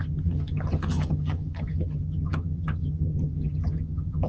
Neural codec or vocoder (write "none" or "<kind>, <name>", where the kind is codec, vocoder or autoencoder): vocoder, HiFi-GAN